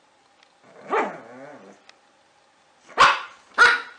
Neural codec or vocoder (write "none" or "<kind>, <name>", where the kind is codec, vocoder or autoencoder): none